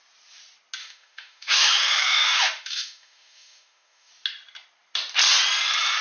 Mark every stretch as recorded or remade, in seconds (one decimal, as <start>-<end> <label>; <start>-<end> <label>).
0.0-0.8 recorded; 0.8-4.1 remade; 4.1-6.0 recorded